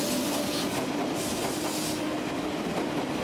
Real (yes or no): yes